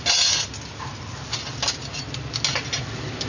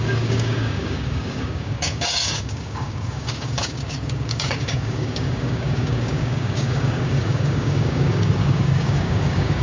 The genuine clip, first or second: first